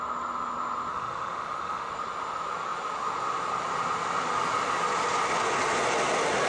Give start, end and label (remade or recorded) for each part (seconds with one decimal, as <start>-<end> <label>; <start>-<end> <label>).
0.0-0.9 recorded; 0.9-1.9 remade; 1.9-6.5 recorded